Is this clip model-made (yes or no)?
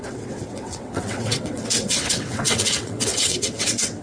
yes